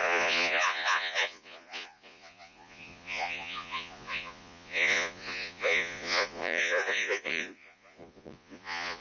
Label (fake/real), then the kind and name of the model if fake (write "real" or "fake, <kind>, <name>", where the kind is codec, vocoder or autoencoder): fake, vocoder, Vocos